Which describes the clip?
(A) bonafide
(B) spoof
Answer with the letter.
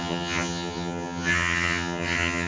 B